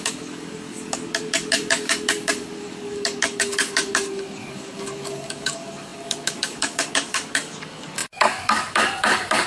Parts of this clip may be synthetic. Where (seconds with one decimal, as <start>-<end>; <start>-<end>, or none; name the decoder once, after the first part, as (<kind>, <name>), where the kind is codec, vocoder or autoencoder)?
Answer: 0.0-9.5 (codec, DAC)